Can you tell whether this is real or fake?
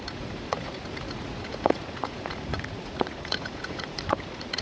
fake